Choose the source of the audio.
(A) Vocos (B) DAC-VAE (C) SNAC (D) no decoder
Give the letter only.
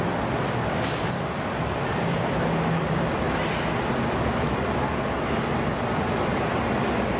D